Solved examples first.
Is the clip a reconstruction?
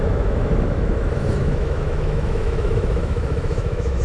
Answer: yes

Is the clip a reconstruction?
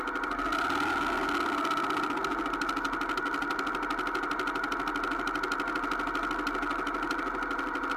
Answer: no